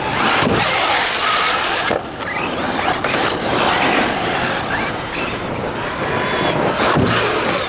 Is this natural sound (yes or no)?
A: yes